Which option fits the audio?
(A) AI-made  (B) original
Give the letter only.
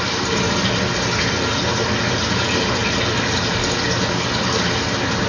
B